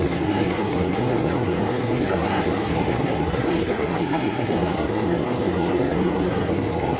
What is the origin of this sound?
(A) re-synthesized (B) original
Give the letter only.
A